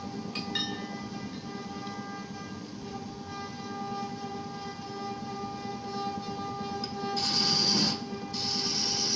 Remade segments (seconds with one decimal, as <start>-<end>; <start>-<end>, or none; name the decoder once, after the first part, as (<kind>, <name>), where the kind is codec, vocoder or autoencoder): none